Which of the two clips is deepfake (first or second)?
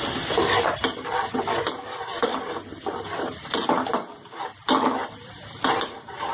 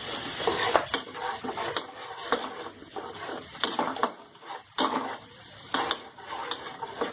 second